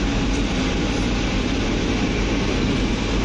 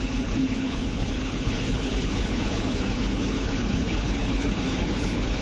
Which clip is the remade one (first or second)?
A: second